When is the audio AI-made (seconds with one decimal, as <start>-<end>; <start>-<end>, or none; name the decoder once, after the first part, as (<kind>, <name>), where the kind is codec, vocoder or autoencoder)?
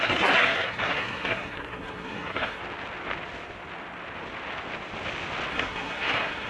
0.0-2.6 (codec, SNAC); 5.5-6.5